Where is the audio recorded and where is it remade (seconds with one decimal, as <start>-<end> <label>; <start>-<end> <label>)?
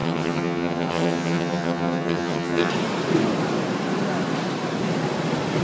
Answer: 0.0-2.7 remade; 2.7-5.6 recorded